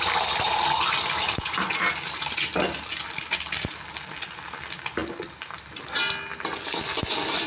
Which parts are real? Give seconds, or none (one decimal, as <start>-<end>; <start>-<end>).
0.0-7.5